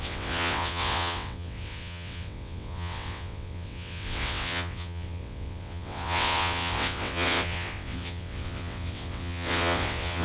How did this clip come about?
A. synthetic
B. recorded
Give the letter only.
A